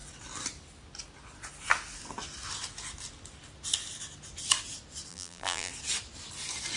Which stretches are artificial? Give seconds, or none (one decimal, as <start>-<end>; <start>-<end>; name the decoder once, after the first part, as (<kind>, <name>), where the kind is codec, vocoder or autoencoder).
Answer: 5.1-5.7 (vocoder, BigVGAN v2)